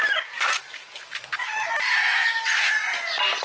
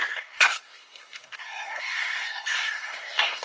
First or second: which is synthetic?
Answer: second